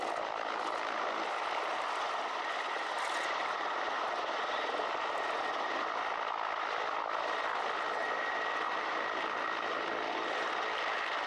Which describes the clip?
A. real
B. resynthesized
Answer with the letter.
A